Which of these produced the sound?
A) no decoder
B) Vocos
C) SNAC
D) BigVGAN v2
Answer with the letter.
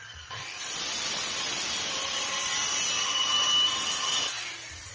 A